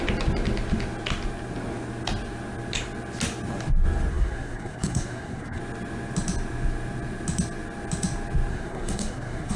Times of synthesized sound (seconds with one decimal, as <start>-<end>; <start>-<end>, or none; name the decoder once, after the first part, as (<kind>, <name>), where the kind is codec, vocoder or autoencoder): 4.1-5.6 (codec, SNAC); 8.5-9.6